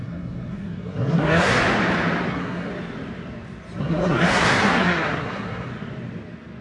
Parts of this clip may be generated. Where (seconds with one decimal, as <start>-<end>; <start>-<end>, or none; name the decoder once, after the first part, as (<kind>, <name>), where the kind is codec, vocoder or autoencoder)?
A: 0.0-1.6 (codec, SNAC); 2.3-2.7; 3.8-5.7